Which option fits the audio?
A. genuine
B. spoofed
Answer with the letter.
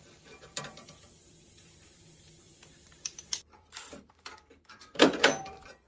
B